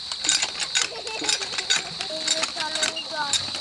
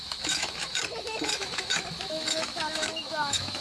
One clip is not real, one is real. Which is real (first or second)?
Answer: first